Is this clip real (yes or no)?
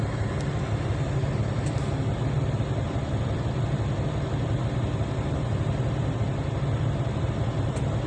yes